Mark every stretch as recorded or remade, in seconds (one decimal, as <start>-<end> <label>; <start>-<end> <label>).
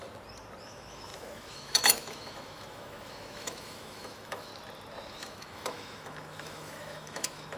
0.0-0.6 recorded; 0.6-4.5 remade; 4.5-5.1 recorded; 5.1-7.6 remade